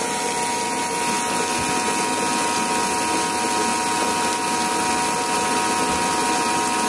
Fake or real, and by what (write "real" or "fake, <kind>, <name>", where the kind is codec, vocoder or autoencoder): real